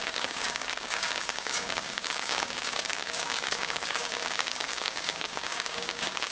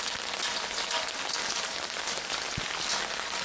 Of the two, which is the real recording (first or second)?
second